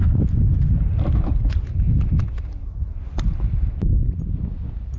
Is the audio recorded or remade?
recorded